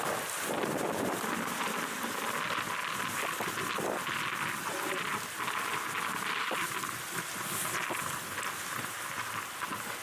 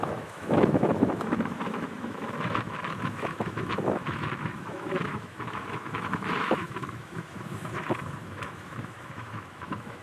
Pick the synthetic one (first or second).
second